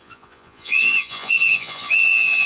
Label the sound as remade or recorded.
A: remade